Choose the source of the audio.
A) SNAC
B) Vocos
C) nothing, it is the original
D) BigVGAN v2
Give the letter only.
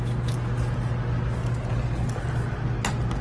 C